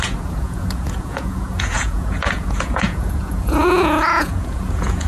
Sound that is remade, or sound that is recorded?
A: remade